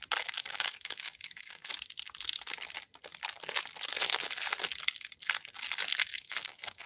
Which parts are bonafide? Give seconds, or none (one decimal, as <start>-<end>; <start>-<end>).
0.0-0.4; 1.7-6.1